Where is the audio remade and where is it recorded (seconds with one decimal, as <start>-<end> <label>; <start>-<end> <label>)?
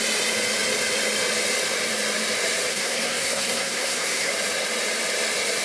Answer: 0.0-2.7 recorded; 2.7-4.3 remade; 4.3-5.6 recorded